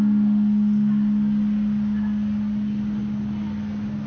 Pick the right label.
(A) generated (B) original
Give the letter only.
B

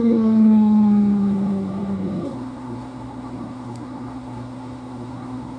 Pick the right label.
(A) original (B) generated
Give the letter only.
B